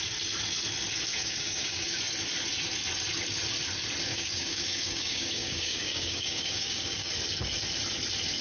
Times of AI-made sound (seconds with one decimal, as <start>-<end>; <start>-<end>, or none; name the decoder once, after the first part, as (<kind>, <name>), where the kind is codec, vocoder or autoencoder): 1.1-2.0 (codec, DAC); 4.1-7.1